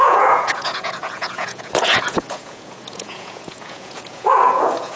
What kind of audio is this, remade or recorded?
remade